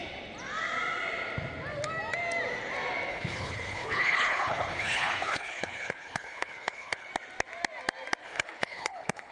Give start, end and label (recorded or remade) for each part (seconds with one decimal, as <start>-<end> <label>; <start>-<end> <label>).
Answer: 0.0-3.1 recorded; 3.1-7.1 remade; 7.1-8.2 recorded; 8.2-9.3 remade